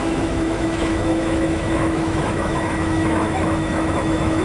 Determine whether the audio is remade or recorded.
remade